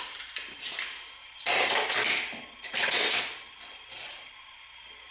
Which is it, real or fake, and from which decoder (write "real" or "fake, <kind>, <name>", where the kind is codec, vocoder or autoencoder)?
real